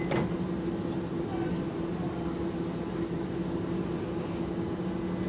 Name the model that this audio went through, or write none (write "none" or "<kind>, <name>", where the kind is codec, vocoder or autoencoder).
none